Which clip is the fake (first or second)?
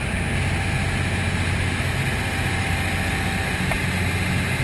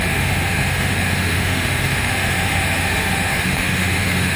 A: second